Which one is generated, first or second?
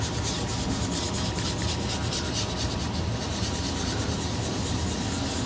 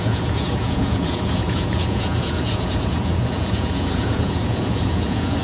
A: second